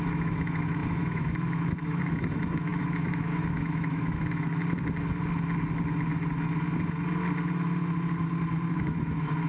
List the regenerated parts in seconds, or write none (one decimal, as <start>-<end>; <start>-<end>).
0.0-4.6; 8.7-9.5